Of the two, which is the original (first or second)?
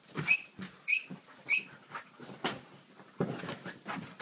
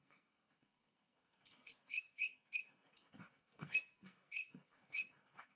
first